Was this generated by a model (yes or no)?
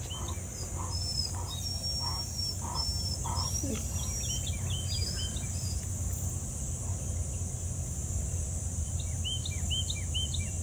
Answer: no